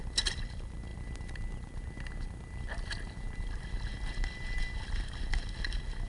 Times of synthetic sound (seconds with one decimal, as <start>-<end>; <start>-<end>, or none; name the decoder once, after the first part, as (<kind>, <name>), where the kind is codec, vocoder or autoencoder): none